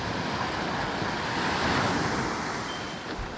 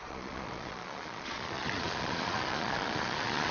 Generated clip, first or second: second